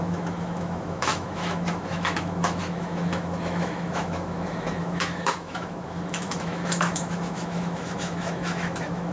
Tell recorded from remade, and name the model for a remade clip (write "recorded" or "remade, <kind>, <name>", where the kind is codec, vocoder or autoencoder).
remade, autoencoder, DAC-VAE